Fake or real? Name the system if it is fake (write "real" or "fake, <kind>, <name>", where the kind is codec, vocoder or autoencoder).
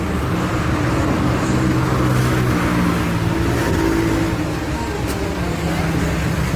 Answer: real